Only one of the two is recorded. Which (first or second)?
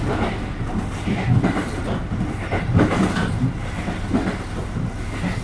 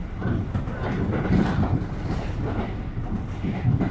first